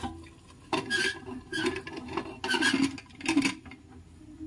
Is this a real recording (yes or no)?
yes